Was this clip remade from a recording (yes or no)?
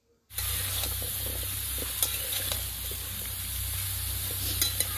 no